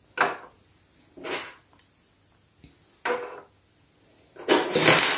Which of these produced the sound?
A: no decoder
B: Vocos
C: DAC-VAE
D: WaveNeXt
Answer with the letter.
A